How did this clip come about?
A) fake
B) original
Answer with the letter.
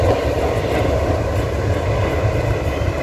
B